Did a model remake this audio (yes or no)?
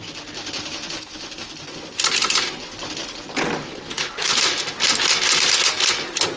no